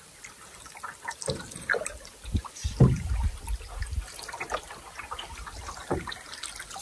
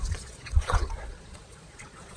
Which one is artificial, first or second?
second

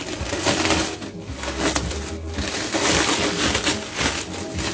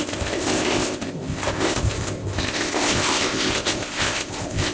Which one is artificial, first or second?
second